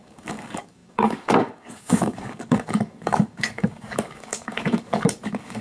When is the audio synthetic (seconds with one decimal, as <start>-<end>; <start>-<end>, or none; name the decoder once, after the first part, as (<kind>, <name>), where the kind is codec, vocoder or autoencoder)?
0.0-5.6 (codec, DAC)